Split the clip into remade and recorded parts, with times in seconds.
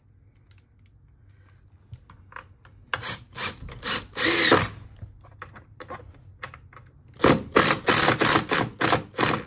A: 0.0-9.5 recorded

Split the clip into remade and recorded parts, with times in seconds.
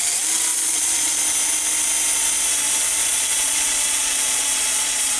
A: 0.0-0.5 recorded; 0.5-1.2 remade; 1.2-3.0 recorded; 3.0-5.2 remade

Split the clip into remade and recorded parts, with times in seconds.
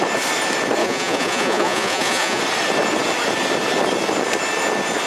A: 0.0-0.8 recorded; 0.8-2.4 remade; 2.4-5.1 recorded